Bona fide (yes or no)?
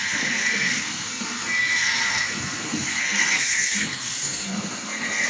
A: no